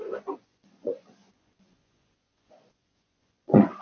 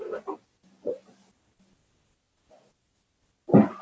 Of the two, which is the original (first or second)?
second